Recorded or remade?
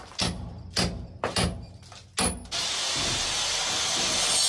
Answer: recorded